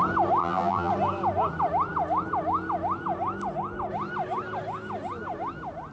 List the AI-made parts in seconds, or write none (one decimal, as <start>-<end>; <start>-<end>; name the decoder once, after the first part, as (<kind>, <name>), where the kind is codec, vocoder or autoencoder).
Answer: 0.4-0.9 (vocoder, BigVGAN v2)